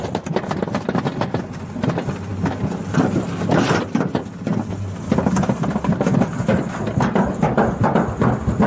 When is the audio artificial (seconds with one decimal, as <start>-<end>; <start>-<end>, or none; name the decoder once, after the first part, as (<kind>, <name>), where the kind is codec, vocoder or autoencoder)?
none